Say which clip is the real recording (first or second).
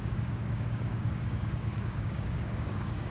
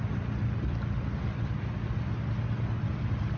second